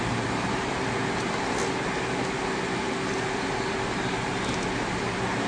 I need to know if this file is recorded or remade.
recorded